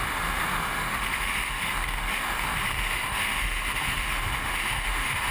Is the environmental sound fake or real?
fake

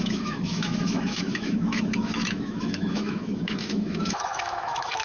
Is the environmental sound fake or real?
fake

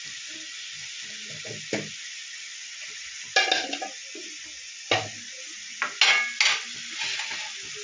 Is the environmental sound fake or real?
real